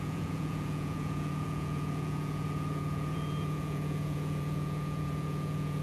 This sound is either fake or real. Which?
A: fake